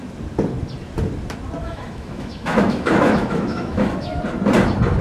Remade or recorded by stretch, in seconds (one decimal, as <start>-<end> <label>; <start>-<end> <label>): 0.0-1.6 recorded; 1.6-4.2 remade; 4.2-5.0 recorded